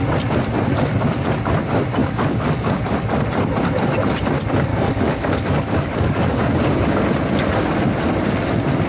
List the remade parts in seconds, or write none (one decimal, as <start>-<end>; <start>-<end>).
2.0-2.8; 4.7-6.4

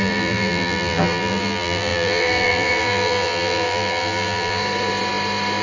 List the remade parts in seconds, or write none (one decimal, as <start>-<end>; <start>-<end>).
0.0-4.6

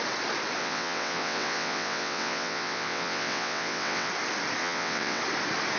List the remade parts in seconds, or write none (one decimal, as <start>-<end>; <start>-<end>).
0.6-4.1; 4.6-5.2

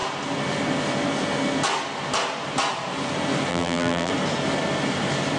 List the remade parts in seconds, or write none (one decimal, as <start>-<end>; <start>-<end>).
3.5-4.1

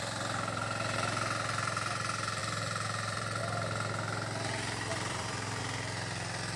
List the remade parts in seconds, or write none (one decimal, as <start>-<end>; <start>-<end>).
2.4-3.4; 4.9-5.6